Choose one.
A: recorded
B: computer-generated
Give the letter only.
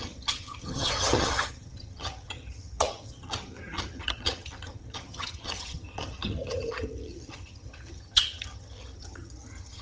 B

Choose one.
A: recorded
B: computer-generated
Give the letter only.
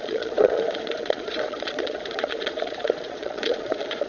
B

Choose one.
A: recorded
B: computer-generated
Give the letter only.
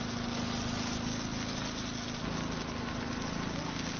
A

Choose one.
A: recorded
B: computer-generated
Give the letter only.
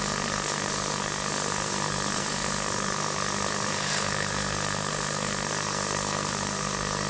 B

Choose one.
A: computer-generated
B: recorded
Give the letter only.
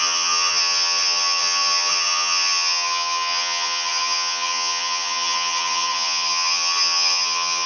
A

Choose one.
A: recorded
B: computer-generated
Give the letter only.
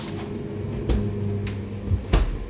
A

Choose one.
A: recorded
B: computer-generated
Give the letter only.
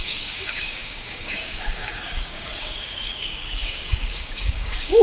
B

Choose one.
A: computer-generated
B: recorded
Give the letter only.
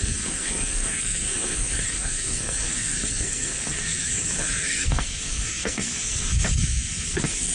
A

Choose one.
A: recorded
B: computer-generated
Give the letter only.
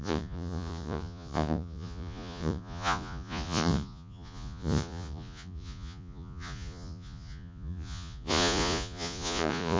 B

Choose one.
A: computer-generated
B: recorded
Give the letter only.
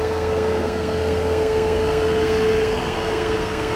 A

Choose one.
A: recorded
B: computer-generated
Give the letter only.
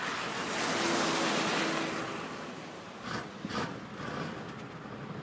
A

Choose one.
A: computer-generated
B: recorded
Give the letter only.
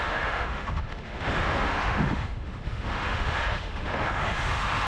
A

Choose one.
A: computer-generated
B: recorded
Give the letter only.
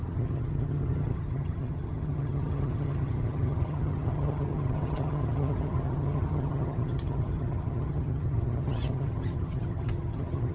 A